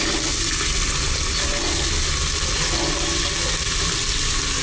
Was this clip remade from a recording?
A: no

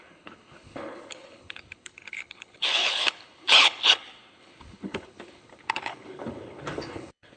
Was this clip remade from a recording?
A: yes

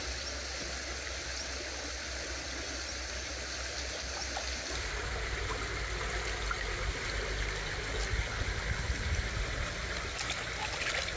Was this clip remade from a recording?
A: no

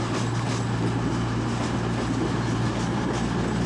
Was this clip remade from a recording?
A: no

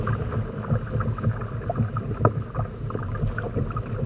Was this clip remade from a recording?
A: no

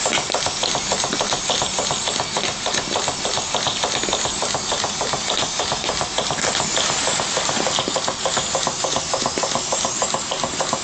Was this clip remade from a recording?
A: no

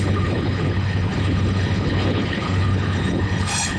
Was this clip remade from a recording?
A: yes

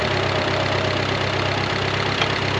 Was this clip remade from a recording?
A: no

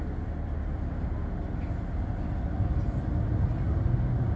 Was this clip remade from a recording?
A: no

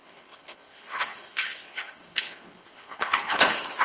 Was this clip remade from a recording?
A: yes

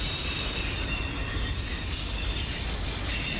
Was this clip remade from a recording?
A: no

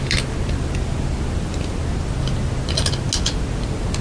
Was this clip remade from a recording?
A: no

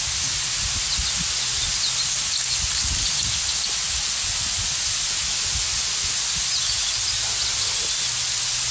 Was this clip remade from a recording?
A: no